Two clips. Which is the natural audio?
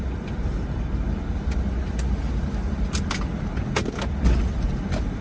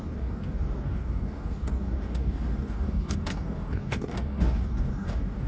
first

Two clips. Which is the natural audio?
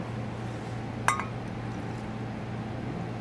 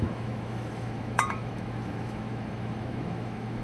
first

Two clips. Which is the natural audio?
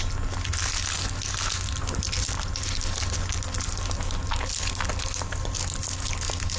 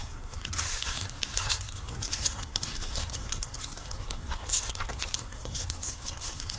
first